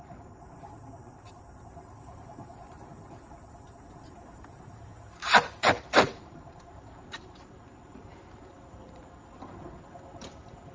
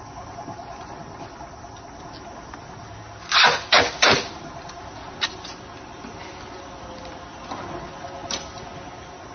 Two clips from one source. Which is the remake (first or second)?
first